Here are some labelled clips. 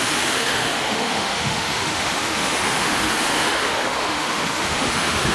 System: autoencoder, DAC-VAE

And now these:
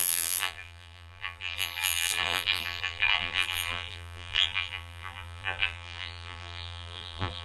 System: vocoder, BigVGAN v2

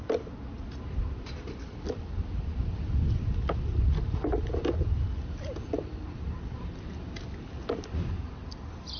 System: none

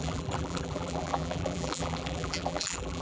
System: vocoder, BigVGAN v2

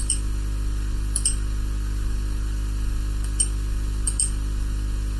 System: none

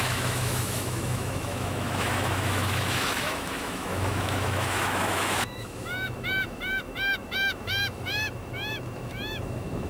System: autoencoder, DAC-VAE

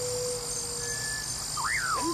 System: none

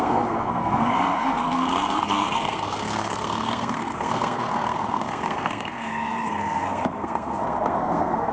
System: codec, SNAC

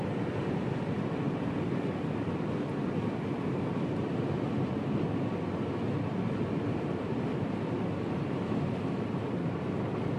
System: none